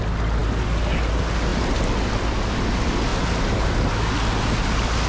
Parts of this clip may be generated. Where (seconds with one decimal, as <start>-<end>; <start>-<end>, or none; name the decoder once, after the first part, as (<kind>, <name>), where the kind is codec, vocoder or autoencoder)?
none